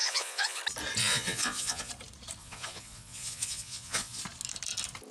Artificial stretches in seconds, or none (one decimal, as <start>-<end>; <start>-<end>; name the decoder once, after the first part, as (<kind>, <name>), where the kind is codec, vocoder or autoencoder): 0.0-0.6 (vocoder, Vocos); 1.0-1.9; 2.4-4.2